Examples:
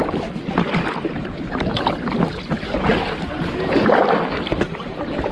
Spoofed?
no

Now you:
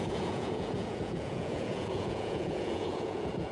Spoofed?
yes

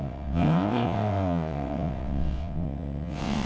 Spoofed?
yes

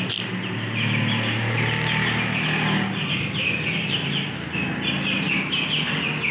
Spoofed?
no